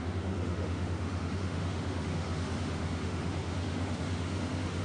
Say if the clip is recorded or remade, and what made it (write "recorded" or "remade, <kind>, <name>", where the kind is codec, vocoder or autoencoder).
remade, autoencoder, DAC-VAE